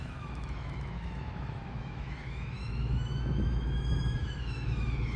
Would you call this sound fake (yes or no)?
yes